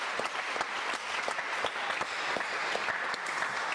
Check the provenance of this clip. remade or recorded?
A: recorded